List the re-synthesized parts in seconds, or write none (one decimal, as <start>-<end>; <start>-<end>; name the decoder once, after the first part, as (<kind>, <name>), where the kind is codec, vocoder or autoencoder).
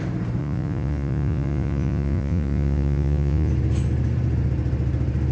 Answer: 0.4-3.5 (vocoder, Vocos)